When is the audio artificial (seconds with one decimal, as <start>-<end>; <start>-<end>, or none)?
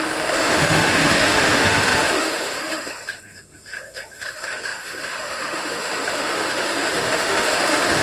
0.0-8.0